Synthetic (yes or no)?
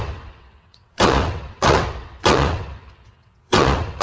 yes